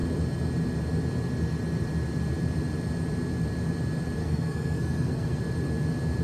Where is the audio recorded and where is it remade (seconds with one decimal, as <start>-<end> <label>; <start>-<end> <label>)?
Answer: 0.0-4.2 recorded; 4.2-5.4 remade; 5.4-6.2 recorded